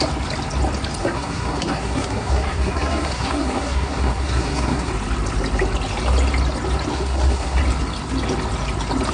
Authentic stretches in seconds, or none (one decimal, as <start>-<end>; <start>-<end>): 0.0-1.0; 4.9-6.9; 7.6-9.1